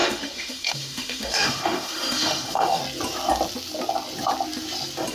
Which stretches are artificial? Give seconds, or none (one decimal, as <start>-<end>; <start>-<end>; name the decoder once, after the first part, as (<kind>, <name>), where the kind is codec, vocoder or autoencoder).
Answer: 0.0-2.8 (autoencoder, DAC-VAE)